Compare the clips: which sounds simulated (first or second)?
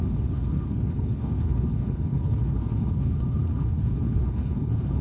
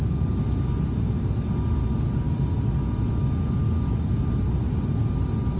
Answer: first